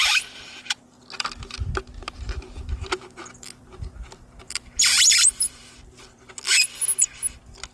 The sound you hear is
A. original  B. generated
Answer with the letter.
B